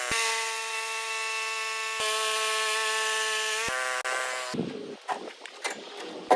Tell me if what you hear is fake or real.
real